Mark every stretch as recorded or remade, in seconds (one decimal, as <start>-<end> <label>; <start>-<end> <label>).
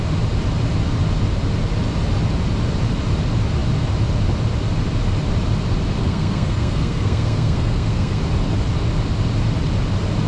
0.0-6.0 recorded; 6.0-8.2 remade; 8.2-10.3 recorded